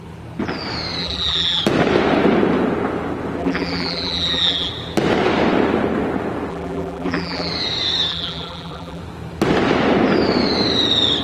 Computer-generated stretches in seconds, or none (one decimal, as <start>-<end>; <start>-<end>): 1.0-1.6; 3.4-4.7; 6.5-7.5; 8.1-9.0